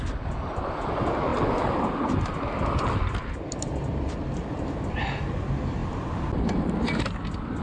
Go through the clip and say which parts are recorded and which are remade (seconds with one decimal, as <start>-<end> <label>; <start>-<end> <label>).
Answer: 0.0-7.6 recorded